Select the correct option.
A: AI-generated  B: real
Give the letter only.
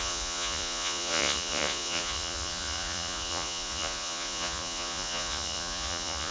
A